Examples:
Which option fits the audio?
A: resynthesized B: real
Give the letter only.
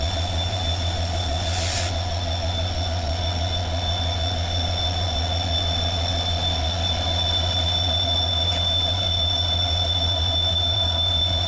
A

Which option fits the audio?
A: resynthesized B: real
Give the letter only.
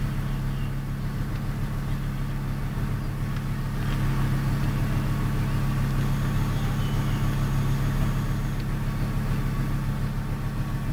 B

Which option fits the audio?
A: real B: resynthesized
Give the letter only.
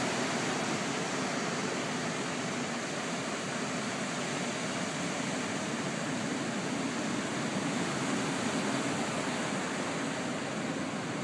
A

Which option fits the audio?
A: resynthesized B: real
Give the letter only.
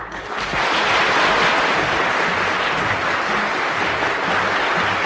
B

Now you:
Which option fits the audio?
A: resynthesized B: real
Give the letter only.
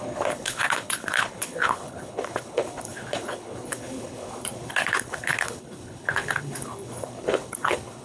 A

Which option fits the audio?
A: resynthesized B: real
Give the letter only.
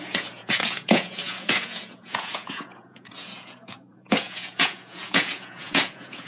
A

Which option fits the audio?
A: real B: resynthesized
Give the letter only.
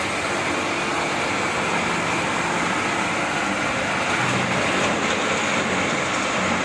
A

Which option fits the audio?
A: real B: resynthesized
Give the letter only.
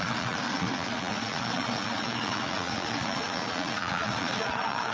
B